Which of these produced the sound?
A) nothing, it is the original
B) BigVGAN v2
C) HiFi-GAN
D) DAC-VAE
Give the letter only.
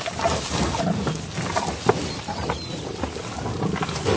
A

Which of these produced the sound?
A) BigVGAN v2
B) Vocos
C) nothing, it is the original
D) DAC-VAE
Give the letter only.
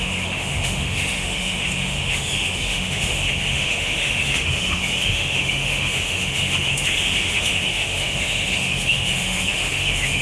D